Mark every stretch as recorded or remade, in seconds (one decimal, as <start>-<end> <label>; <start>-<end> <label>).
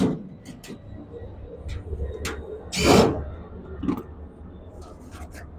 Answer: 0.0-5.6 recorded